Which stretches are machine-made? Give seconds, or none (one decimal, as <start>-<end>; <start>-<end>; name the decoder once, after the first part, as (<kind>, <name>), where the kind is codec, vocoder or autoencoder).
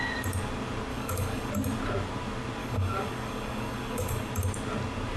0.9-1.5 (codec, DAC); 2.6-4.3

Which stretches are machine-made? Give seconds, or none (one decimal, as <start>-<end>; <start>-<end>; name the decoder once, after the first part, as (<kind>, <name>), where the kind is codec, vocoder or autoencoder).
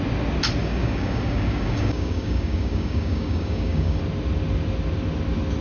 0.6-4.0 (codec, DAC)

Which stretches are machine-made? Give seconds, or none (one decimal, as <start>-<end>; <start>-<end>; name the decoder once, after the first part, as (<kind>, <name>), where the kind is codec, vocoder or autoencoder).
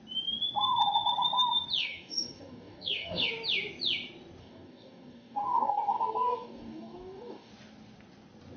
1.8-3.3 (codec, DAC); 4.4-7.5